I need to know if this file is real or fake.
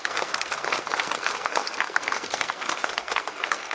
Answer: fake